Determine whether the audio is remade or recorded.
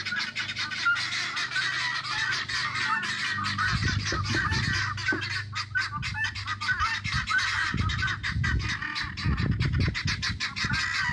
recorded